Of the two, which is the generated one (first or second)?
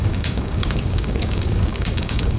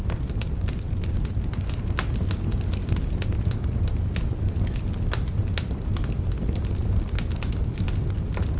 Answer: first